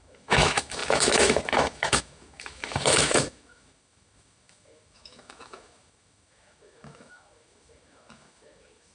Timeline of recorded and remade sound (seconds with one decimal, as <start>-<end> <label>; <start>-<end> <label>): 0.0-8.9 remade